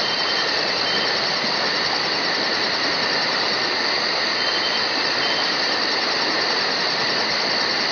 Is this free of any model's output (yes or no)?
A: yes